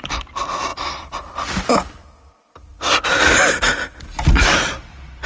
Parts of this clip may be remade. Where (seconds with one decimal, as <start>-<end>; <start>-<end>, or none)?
none